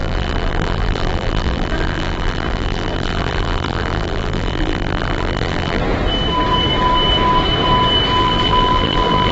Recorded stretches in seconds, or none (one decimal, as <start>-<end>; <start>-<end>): 5.8-8.2

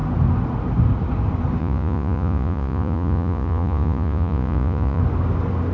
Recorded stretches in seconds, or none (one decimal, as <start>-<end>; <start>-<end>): 0.0-1.6; 5.0-5.7

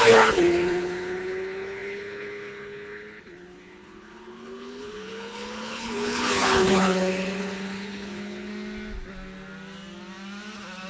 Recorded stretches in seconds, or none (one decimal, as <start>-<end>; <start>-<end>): 8.5-10.9

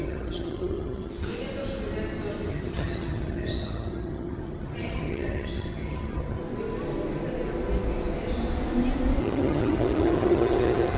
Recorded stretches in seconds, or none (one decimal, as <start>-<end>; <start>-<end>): 1.3-2.5; 6.4-9.2

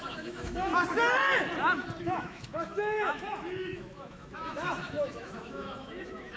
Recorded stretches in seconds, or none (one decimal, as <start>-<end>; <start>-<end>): 0.7-2.0